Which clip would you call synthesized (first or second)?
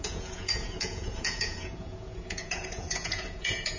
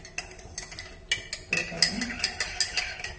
first